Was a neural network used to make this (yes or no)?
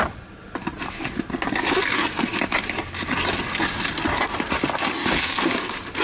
no